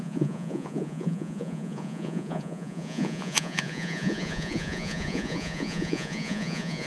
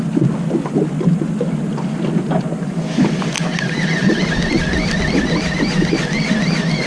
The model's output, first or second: first